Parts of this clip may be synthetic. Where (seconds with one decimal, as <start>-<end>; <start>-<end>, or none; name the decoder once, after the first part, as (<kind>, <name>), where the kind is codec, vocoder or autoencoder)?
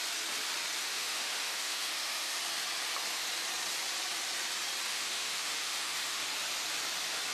0.8-2.4 (autoencoder, DAC-VAE); 4.9-6.2